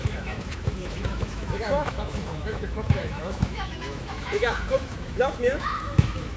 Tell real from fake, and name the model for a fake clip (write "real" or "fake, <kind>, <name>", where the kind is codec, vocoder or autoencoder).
fake, autoencoder, DAC-VAE